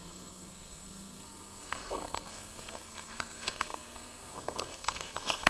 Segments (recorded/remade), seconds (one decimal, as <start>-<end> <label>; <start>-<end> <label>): 0.0-5.5 remade